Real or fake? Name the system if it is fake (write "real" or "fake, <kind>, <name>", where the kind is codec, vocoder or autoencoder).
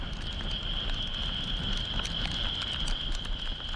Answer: real